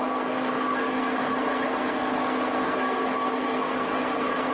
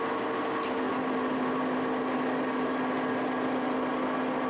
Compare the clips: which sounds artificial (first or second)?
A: first